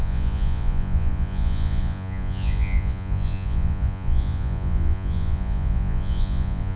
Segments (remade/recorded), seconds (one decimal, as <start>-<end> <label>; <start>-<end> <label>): 0.0-6.8 remade